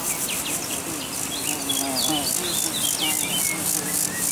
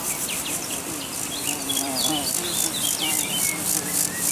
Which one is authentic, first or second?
first